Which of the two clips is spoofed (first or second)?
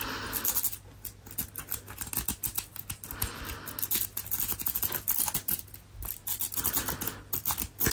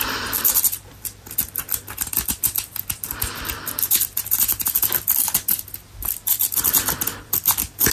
second